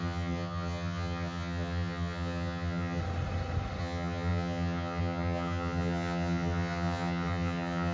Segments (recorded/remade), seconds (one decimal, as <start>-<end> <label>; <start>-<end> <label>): 0.0-3.0 remade; 3.0-3.8 recorded; 3.8-7.9 remade